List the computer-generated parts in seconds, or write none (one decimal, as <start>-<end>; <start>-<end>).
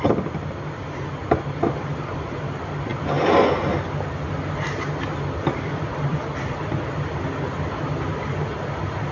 0.0-2.9; 4.5-9.1